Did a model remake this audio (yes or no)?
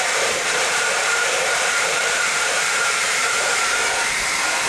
yes